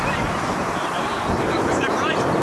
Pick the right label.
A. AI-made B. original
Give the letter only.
A